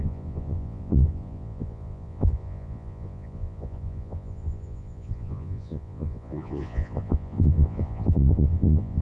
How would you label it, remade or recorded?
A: remade